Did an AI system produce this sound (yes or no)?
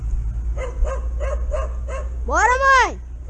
no